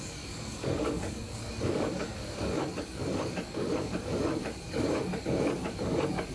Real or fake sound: fake